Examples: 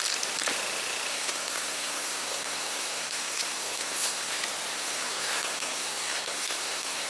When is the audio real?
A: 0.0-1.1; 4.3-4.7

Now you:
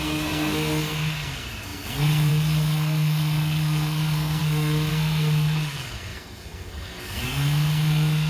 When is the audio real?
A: none

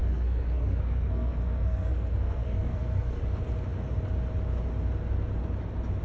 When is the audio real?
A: 3.2-6.0

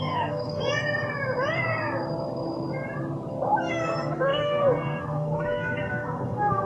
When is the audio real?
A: 0.6-3.7

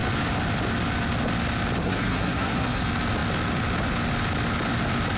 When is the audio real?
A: 0.0-1.8; 2.8-5.2

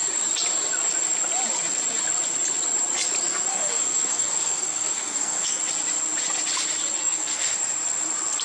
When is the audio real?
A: 0.0-3.5; 5.6-7.0; 7.6-8.4

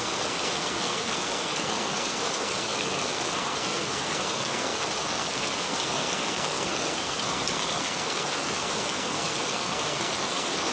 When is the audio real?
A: none